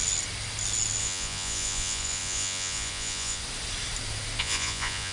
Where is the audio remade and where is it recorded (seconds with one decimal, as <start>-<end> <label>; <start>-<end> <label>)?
0.0-1.0 recorded; 1.0-3.4 remade; 3.4-4.4 recorded; 4.4-5.1 remade